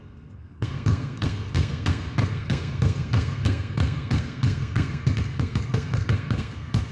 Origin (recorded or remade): remade